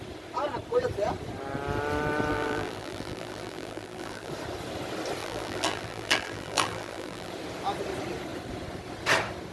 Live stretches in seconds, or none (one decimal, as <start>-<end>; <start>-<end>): 0.0-2.3; 4.3-5.2; 7.3-9.5